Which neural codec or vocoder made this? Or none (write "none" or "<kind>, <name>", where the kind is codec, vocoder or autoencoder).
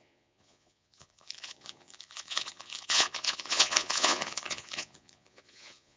vocoder, Vocos